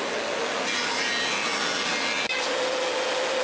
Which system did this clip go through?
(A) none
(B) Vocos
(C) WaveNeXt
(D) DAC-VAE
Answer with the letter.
A